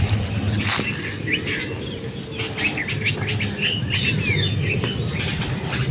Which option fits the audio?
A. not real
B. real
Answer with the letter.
B